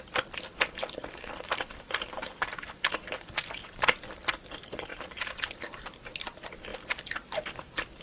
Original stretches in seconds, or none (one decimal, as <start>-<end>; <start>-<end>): 0.0-2.2; 4.0-4.9; 5.5-8.0